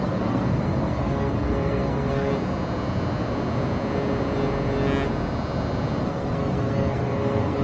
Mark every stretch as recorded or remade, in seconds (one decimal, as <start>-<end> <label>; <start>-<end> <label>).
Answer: 0.0-2.3 remade; 2.3-6.0 recorded; 6.0-7.6 remade